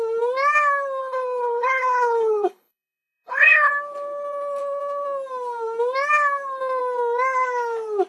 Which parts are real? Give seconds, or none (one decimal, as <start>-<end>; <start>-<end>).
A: 0.0-1.0; 3.7-8.1